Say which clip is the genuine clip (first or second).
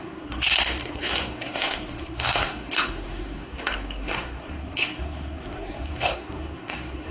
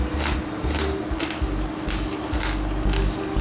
second